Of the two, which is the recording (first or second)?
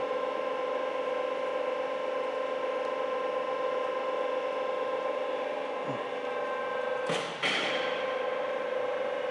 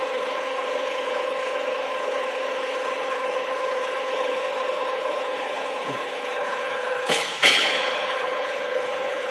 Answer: first